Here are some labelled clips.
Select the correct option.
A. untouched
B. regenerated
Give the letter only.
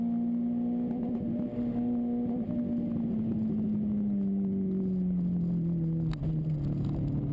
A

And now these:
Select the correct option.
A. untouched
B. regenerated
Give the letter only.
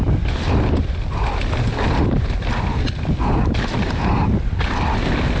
A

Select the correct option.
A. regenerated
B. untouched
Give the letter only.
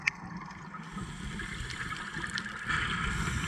B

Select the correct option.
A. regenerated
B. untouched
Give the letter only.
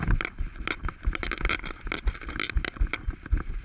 B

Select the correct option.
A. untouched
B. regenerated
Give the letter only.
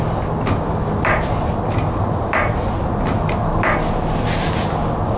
A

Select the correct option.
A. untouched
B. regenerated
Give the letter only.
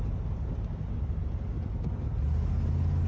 A